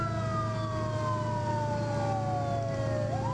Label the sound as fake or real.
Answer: real